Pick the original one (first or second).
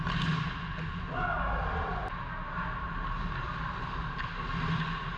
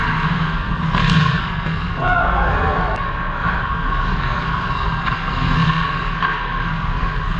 first